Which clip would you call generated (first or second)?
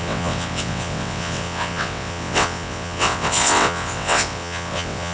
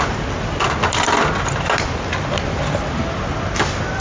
first